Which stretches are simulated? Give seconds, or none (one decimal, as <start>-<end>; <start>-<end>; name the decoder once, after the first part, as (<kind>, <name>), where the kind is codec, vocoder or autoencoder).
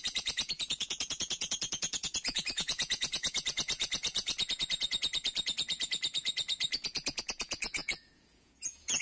0.0-9.0 (vocoder, Vocos)